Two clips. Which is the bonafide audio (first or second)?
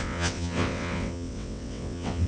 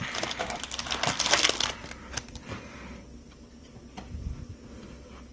second